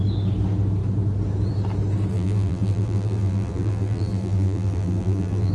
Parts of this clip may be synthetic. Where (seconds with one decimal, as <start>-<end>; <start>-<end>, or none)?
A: 2.1-5.5